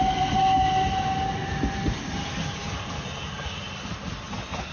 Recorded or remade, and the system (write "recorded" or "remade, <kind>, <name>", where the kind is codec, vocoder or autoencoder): recorded